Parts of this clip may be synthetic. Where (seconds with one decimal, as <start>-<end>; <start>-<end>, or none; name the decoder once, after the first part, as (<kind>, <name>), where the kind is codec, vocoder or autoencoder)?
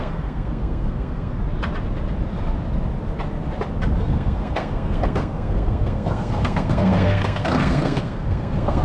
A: 0.0-1.4 (codec, SNAC); 4.0-8.8